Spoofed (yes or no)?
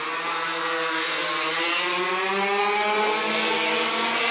no